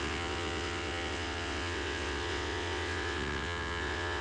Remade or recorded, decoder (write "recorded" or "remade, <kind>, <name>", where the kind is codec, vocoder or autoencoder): remade, vocoder, WaveNeXt